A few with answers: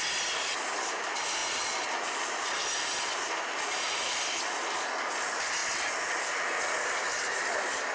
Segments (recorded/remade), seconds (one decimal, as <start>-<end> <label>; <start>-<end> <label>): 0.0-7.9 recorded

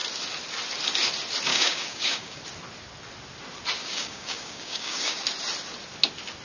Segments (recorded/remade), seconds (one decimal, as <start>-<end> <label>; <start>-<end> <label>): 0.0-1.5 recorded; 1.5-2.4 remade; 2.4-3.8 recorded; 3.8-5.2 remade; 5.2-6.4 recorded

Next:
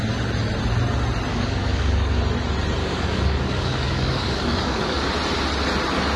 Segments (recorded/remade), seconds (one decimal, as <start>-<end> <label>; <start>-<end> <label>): 0.0-1.3 recorded; 1.3-2.2 remade; 2.2-2.8 recorded; 2.8-5.1 remade; 5.1-6.2 recorded

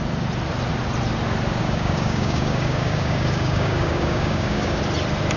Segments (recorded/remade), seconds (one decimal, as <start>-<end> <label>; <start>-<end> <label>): 0.0-1.6 recorded; 1.6-4.8 remade; 4.8-5.4 recorded

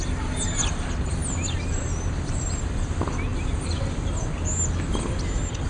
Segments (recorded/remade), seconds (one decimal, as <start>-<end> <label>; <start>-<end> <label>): 0.0-5.7 recorded

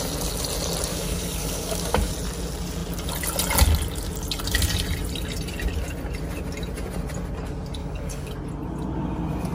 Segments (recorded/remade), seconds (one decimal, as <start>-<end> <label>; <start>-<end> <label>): 0.0-0.9 recorded; 0.9-2.1 remade; 2.1-7.8 recorded; 7.8-8.3 remade; 8.3-9.5 recorded

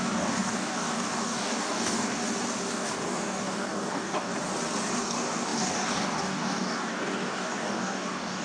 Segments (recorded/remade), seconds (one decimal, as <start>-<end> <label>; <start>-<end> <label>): 0.0-2.2 remade; 2.2-2.7 recorded; 2.7-4.3 remade; 4.3-5.0 recorded; 5.0-8.4 remade

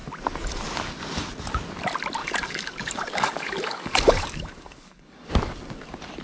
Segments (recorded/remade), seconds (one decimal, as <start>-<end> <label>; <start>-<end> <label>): 0.0-2.2 recorded; 2.2-5.3 remade; 5.3-6.2 recorded